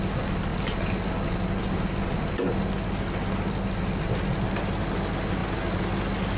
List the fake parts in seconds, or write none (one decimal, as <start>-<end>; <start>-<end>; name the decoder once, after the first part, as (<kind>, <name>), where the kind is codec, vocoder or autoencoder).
none